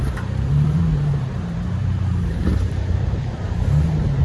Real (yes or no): no